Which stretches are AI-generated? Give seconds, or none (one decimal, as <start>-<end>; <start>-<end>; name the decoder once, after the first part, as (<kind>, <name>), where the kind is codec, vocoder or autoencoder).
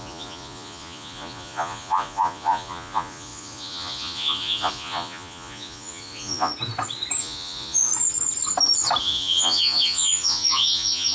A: 0.0-6.5 (vocoder, Vocos); 7.2-7.9; 9.0-11.1